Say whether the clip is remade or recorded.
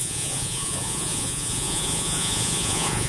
remade